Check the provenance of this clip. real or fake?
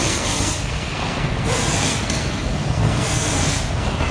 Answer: fake